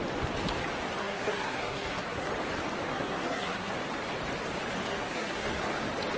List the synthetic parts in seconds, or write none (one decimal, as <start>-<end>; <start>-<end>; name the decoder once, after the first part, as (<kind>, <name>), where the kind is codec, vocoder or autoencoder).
1.0-2.3 (codec, SNAC); 2.9-3.7; 4.9-5.6